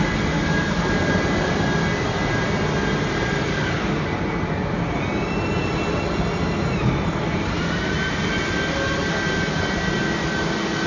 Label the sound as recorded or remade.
recorded